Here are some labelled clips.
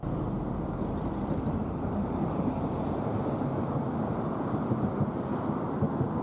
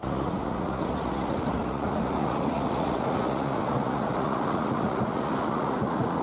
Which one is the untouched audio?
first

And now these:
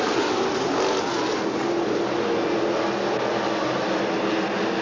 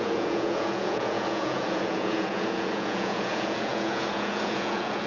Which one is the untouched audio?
first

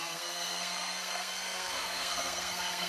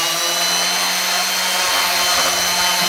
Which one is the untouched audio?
second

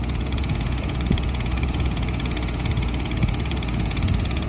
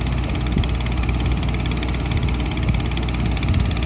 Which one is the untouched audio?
second